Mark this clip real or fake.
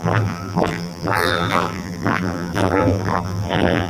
fake